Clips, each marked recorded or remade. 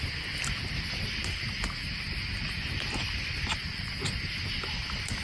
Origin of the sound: recorded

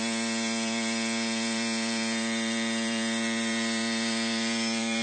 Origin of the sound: remade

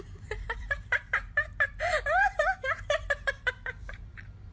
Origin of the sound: remade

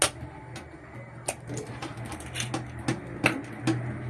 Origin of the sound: recorded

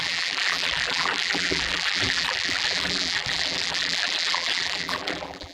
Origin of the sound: remade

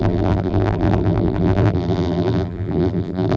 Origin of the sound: remade